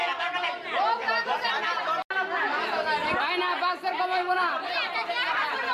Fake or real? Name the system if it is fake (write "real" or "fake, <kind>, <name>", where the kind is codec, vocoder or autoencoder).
real